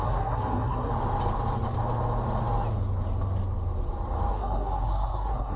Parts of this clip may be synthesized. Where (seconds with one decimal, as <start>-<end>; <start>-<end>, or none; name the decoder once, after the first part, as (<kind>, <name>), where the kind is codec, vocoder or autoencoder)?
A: 0.0-0.9 (codec, SNAC); 4.3-5.6